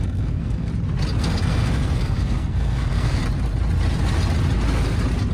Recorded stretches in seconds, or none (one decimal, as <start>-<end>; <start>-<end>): 0.7-1.2; 3.2-5.3